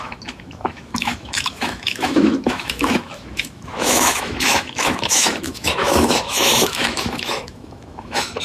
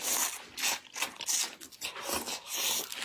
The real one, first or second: second